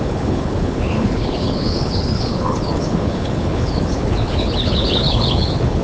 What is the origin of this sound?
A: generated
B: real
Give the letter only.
A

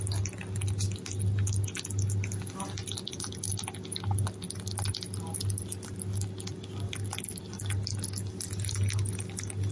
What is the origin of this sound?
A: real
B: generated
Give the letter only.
A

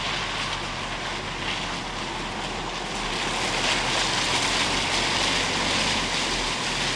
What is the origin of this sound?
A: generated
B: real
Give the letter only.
B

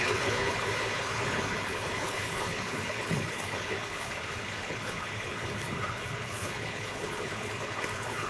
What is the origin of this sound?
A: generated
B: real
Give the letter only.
A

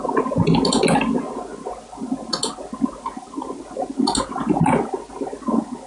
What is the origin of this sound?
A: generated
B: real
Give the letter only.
B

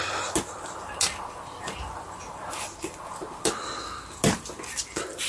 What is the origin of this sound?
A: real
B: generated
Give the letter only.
A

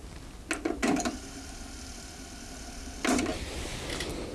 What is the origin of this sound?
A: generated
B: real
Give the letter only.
B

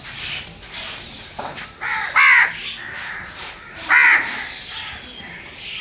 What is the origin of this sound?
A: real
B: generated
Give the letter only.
A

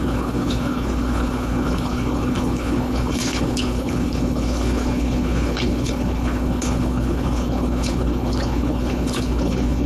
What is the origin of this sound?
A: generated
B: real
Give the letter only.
A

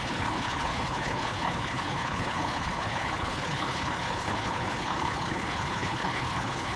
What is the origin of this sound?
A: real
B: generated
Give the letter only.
B